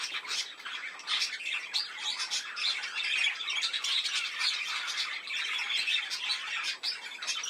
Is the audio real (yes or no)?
yes